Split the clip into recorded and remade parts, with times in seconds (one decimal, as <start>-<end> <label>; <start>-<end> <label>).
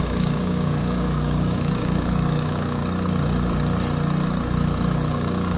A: 0.0-2.8 remade; 2.8-5.1 recorded; 5.1-5.6 remade